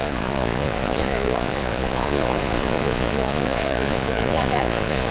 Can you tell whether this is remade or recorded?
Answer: remade